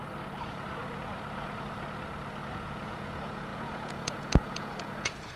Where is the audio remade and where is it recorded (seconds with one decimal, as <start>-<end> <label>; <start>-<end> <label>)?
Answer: 0.0-2.5 recorded; 2.5-5.4 remade